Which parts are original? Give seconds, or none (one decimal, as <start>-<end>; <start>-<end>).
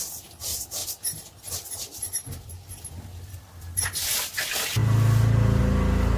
0.0-6.2